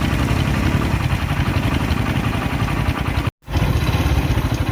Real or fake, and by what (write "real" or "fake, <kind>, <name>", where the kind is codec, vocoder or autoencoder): real